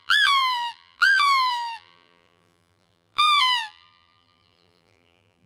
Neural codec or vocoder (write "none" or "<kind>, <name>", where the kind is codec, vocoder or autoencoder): vocoder, BigVGAN v2